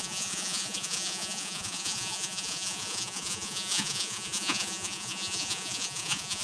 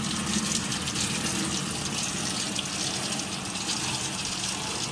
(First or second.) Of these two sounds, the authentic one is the second